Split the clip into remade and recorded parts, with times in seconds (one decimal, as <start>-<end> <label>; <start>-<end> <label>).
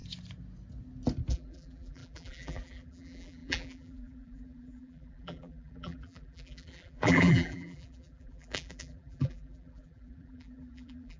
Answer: 0.0-1.3 recorded; 1.3-11.2 remade